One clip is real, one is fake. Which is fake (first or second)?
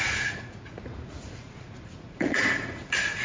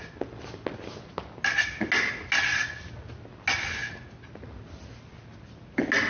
first